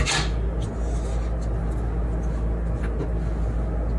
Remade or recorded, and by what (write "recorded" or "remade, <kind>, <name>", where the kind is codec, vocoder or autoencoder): recorded